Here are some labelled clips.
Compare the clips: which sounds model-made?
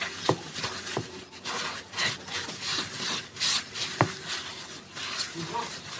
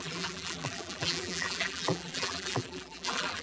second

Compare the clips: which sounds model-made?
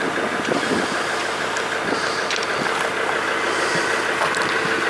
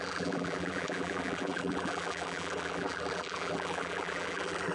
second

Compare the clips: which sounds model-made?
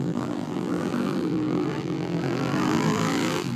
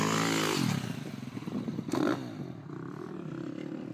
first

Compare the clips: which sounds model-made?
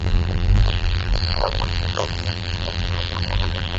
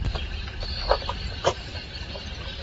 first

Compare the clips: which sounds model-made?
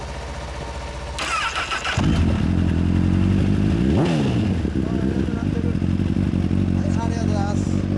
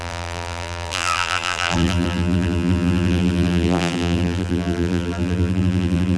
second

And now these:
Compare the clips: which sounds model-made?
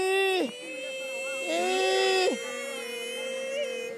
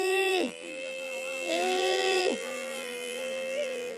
second